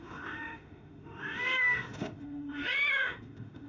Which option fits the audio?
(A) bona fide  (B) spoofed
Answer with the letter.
B